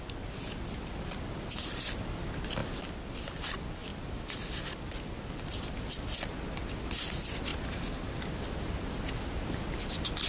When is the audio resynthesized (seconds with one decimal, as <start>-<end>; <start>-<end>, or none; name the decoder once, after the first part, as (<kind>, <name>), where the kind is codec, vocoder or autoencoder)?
3.9-4.7 (vocoder, BigVGAN v2); 7.5-8.2

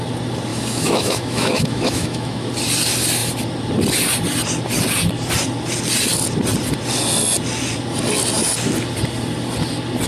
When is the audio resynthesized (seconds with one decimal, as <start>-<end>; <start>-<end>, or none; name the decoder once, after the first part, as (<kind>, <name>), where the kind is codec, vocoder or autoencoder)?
0.5-2.5 (autoencoder, DAC-VAE)